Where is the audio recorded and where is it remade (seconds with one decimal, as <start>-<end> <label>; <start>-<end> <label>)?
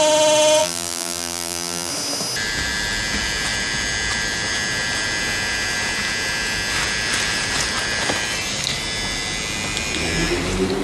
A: 0.0-0.6 recorded; 0.6-1.9 remade; 1.9-10.8 recorded